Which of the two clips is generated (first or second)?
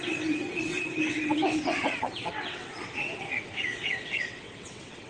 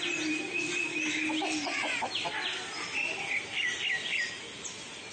first